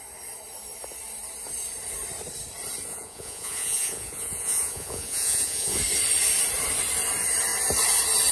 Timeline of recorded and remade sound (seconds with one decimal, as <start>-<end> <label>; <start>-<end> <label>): 0.0-2.9 recorded; 2.9-5.8 remade; 5.8-8.3 recorded

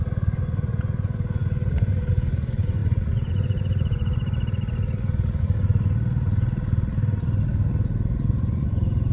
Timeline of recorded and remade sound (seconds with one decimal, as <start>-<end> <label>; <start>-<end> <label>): 0.0-4.3 remade; 4.3-8.3 recorded; 8.3-9.1 remade

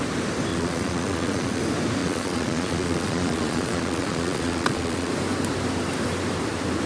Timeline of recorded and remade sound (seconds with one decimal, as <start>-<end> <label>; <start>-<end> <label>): 0.0-0.5 recorded; 0.5-1.6 remade; 1.6-2.0 recorded; 2.0-5.1 remade; 5.1-6.9 recorded

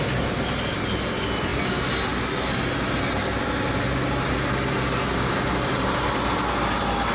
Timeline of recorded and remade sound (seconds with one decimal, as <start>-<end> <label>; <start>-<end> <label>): 0.0-7.1 recorded

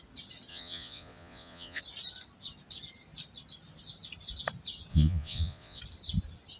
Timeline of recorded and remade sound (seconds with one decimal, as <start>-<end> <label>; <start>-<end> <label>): 0.0-0.5 recorded; 0.5-1.8 remade; 1.8-4.9 recorded; 4.9-5.8 remade; 5.8-6.6 recorded

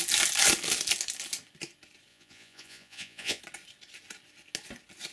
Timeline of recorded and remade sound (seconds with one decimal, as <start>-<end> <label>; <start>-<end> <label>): 0.0-2.1 recorded; 2.1-3.4 remade; 3.4-5.1 recorded

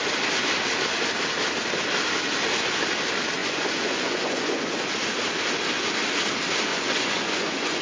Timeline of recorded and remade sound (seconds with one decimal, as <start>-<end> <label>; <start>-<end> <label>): 0.0-3.4 recorded; 3.4-4.8 remade; 4.8-6.7 recorded; 6.7-7.8 remade

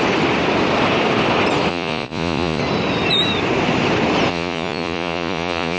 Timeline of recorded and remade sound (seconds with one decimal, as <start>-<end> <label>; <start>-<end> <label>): 0.0-1.7 recorded; 1.7-2.6 remade; 2.6-4.3 recorded; 4.3-5.8 remade